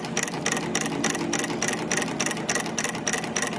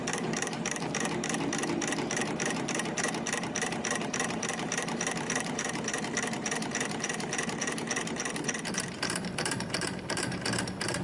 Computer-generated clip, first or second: second